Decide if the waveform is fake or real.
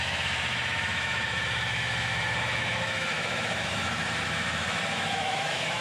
fake